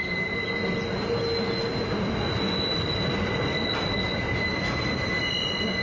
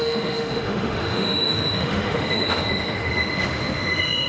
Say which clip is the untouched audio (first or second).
first